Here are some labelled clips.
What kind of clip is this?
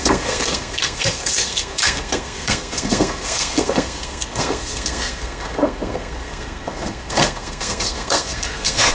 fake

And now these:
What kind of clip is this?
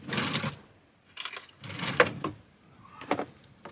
real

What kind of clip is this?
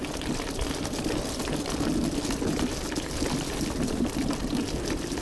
real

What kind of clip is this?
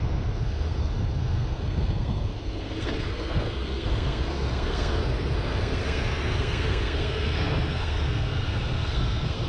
fake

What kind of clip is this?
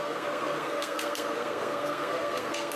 fake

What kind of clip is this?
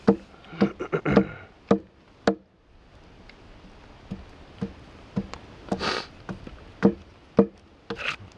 real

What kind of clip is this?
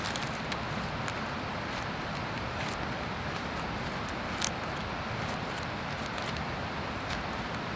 real